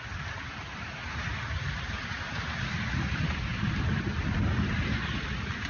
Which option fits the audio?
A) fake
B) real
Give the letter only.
B